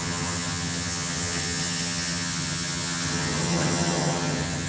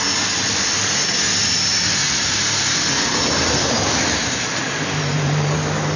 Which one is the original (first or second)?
second